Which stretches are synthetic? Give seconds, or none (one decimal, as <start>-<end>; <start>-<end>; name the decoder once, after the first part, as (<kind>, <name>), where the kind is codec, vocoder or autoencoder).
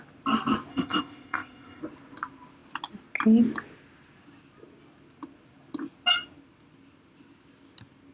0.7-1.8 (codec, ZipCodec)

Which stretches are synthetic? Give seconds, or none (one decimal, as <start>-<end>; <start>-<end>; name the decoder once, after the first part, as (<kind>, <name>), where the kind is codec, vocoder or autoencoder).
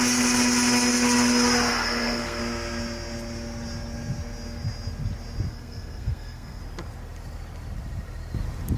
1.7-2.4 (codec, SNAC); 5.5-6.6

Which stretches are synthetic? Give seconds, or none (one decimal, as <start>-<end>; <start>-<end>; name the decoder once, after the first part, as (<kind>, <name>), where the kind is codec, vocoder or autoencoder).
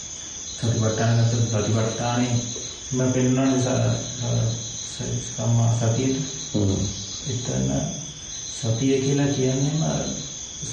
none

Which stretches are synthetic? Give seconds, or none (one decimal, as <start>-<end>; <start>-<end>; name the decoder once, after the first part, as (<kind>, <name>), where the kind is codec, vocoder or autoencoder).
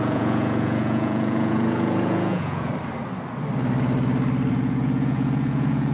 0.0-2.7 (vocoder, Vocos); 4.5-5.9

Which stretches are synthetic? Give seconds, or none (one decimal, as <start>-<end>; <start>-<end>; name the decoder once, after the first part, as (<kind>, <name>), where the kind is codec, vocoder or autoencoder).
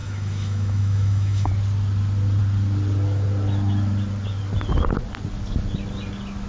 0.0-1.5 (autoencoder, DAC-VAE)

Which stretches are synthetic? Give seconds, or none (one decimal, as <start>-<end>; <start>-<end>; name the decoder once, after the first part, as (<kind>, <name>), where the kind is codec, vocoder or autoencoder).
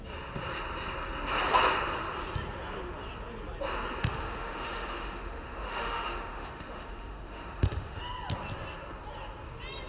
4.0-8.0 (autoencoder, DAC-VAE)